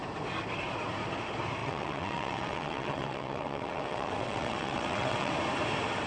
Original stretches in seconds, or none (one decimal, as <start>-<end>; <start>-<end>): 0.0-1.6; 5.3-6.1